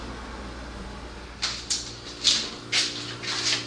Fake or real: real